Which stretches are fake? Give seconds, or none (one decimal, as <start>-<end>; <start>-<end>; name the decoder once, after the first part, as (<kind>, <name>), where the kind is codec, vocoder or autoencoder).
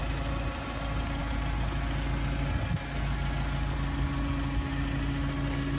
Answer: none